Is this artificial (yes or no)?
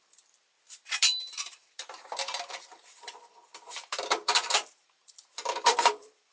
yes